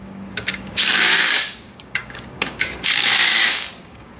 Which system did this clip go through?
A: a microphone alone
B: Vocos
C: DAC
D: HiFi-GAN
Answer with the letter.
C